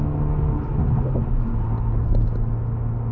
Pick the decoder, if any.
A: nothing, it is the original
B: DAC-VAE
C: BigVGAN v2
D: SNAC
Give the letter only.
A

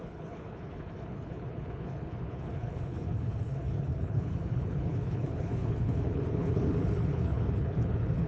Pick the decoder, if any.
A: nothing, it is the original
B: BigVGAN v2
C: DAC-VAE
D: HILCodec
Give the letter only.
D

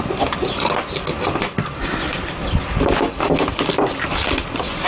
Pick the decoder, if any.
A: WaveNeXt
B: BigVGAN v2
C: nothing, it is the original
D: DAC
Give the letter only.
C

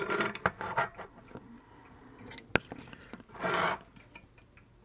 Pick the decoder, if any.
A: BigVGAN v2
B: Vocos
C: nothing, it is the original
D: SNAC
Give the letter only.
C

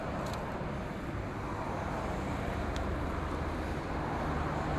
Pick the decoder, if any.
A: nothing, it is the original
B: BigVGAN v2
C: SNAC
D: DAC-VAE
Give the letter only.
A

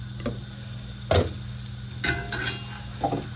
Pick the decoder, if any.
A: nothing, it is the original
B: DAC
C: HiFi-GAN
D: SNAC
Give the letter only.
A